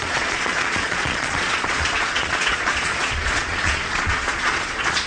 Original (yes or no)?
no